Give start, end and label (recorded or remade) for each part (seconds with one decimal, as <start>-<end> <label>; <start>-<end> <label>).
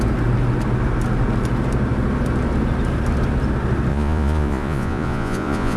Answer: 0.0-3.9 recorded; 3.9-5.8 remade